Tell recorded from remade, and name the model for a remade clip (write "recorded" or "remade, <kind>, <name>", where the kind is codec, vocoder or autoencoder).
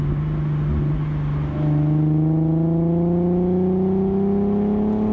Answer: recorded